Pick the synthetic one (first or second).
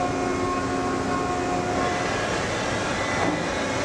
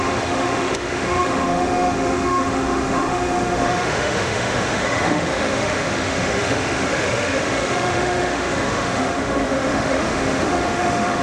second